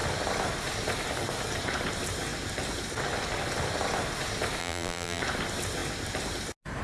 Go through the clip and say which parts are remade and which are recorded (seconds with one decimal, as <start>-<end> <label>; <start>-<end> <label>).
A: 0.0-4.6 recorded; 4.6-5.2 remade; 5.2-6.8 recorded